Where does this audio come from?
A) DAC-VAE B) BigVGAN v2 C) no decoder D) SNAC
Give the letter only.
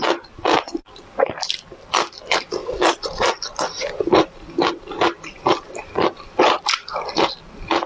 C